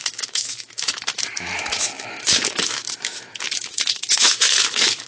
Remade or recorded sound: remade